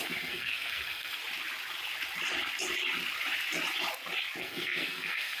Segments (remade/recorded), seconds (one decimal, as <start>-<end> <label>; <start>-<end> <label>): 0.0-1.2 remade; 1.2-4.4 recorded; 4.4-5.4 remade